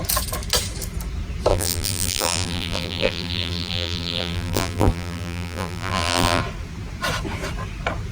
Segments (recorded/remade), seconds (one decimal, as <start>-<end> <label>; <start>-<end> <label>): 0.0-1.5 recorded; 1.5-6.4 remade; 6.4-8.1 recorded